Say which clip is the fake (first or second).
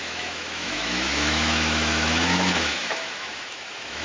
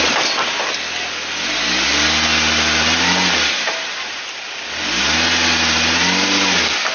first